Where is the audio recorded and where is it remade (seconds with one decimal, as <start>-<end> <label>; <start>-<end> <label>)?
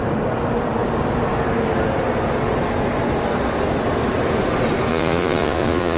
0.0-4.9 recorded; 4.9-6.0 remade